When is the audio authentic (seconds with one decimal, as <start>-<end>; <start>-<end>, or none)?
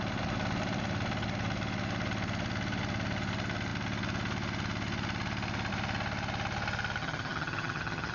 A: 0.0-7.0